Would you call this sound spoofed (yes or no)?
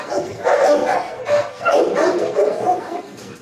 yes